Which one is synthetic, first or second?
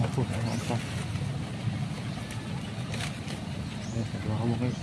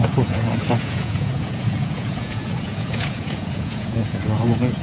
second